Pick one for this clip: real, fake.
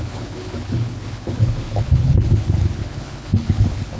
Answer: fake